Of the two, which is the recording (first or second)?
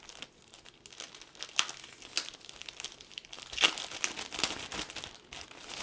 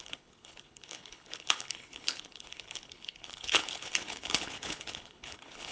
first